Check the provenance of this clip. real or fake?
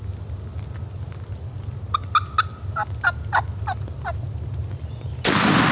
real